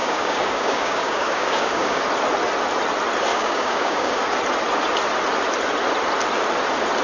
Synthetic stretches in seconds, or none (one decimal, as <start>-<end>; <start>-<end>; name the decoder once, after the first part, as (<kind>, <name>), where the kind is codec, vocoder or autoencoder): 0.0-2.0 (codec, DAC); 3.3-4.2